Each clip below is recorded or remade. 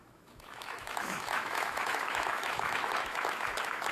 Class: remade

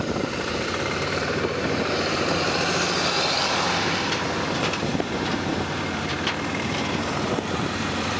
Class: remade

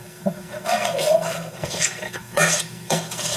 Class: remade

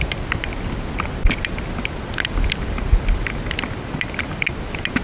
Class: recorded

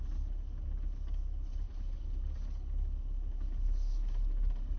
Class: recorded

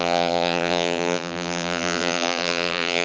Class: remade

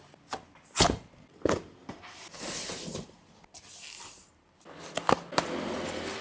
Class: recorded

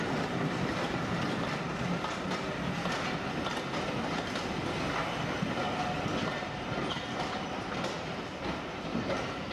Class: recorded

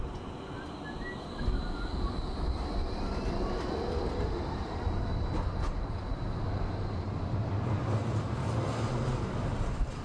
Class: recorded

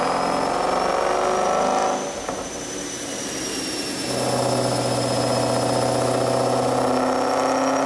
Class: recorded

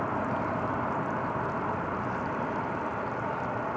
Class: recorded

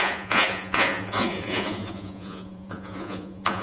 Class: remade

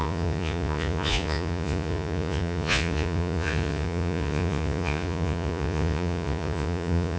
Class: remade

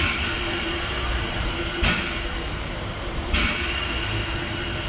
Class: remade